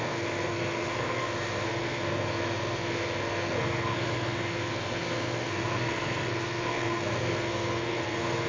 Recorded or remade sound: remade